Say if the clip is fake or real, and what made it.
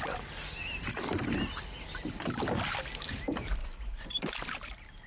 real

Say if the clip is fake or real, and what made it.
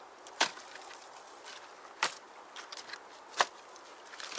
real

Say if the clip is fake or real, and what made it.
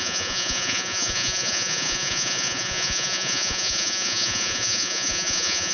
fake, vocoder, Vocos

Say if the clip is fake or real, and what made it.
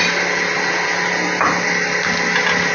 real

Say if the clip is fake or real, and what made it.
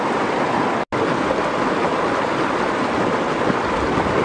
real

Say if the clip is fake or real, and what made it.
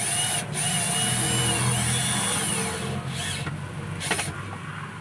real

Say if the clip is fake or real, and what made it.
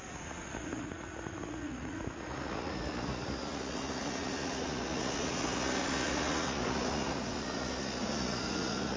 fake, vocoder, Vocos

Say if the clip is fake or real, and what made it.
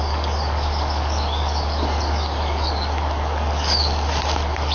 fake, codec, DAC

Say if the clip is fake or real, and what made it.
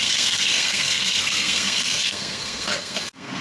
fake, codec, SNAC